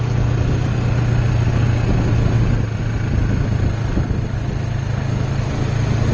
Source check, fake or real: real